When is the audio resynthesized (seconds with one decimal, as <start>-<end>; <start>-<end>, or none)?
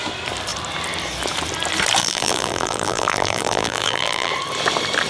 2.0-4.3